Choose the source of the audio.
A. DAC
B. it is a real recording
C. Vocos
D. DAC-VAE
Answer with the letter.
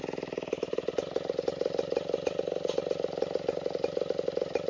B